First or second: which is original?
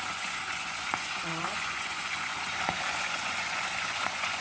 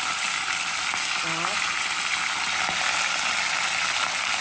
second